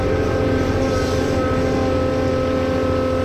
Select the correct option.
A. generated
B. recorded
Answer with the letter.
B